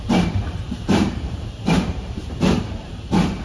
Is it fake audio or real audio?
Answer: fake